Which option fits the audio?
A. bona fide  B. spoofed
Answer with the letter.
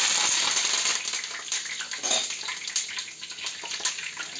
A